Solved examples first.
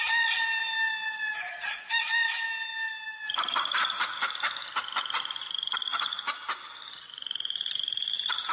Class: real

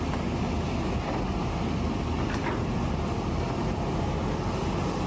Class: real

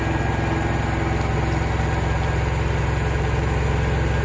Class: real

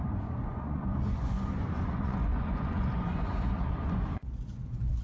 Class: fake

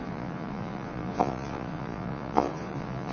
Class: fake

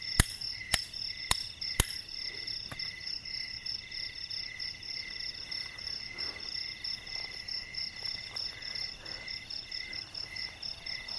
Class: real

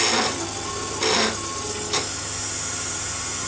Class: real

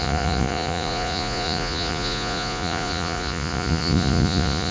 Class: fake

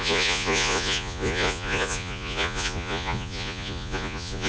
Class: fake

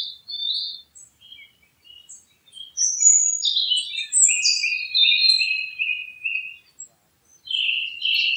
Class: real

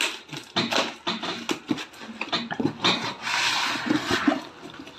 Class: real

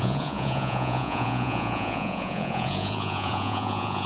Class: fake